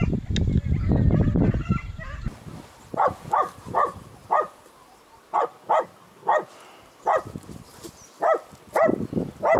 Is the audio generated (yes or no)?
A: no